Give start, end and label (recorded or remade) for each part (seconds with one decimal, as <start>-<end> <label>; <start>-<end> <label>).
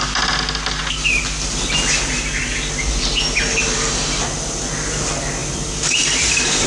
0.0-6.7 recorded